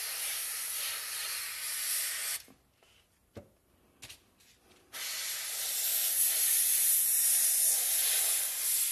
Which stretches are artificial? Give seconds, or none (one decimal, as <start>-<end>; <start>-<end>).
none